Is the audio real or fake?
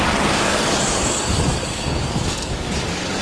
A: fake